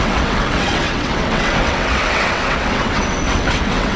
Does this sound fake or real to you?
fake